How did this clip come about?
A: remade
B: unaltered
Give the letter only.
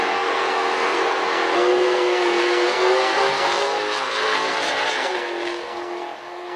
A